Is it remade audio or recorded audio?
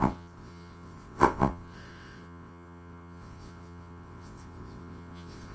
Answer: remade